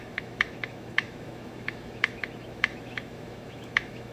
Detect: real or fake fake